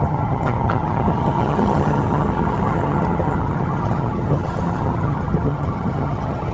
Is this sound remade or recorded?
remade